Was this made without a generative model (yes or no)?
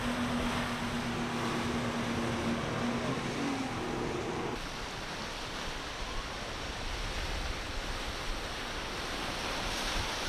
yes